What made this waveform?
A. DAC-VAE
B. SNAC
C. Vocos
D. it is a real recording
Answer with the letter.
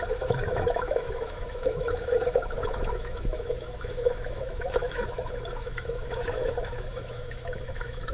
A